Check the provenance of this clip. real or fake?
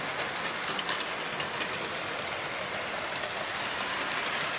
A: real